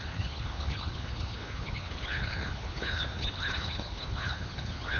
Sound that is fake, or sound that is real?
fake